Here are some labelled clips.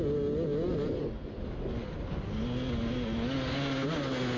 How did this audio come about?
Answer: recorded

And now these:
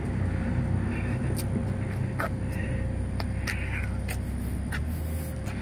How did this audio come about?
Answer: recorded